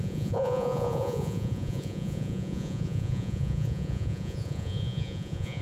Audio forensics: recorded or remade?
remade